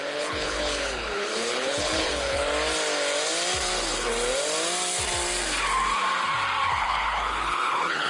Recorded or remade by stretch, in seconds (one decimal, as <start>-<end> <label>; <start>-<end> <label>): 0.0-2.4 remade; 2.4-6.7 recorded; 6.7-8.1 remade